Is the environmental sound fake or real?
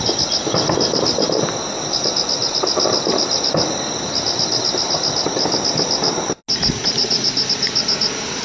real